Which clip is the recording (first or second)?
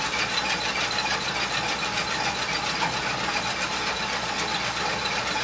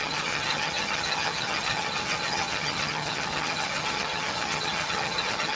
first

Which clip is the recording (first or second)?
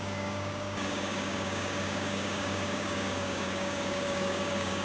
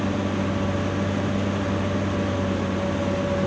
second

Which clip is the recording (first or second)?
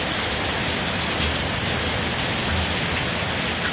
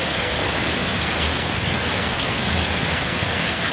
first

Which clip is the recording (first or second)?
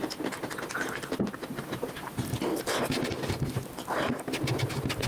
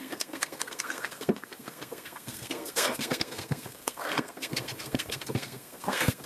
first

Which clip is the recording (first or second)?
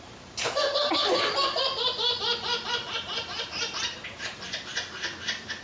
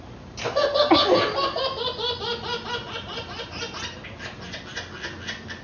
second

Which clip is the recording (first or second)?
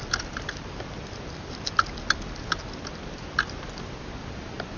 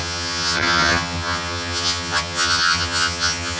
first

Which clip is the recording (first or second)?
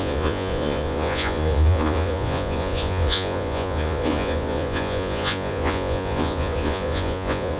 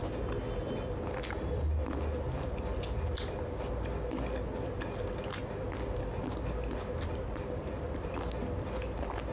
second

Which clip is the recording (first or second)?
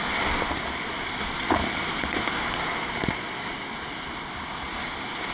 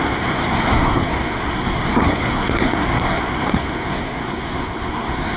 first